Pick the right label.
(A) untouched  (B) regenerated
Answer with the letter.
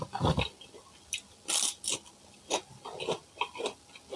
A